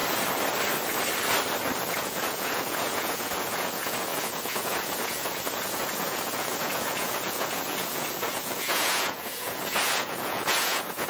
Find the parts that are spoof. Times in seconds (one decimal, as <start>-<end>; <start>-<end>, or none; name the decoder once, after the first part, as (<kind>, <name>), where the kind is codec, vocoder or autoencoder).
1.9-11.1 (vocoder, Vocos)